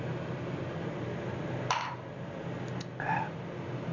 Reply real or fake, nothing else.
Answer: real